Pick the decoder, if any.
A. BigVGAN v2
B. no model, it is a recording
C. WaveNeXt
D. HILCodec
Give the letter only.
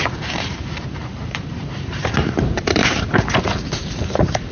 A